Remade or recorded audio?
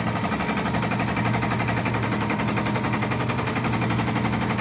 recorded